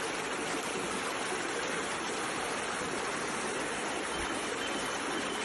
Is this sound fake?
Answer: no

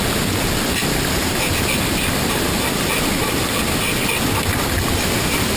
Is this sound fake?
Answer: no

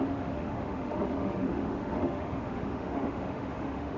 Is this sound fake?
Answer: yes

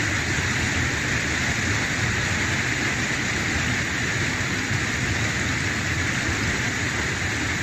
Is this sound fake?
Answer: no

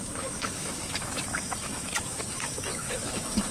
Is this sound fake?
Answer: yes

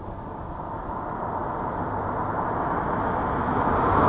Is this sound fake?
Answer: no